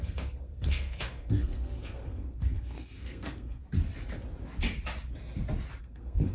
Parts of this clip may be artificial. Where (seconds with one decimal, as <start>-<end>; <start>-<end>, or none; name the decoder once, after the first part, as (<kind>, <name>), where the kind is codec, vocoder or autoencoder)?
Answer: 0.0-3.6 (codec, SNAC); 5.8-6.3